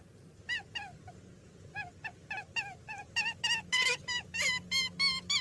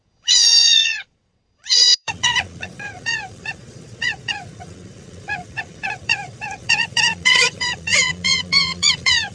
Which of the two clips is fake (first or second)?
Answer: second